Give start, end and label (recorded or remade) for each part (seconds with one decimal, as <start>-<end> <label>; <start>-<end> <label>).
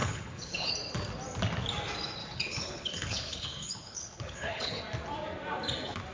0.0-0.7 remade; 0.7-2.2 recorded; 2.2-4.8 remade; 4.8-6.1 recorded